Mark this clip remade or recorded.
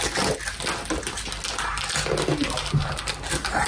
recorded